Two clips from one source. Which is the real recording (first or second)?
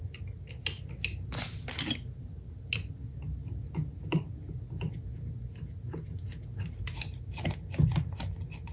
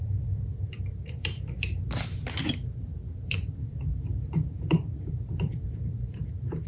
first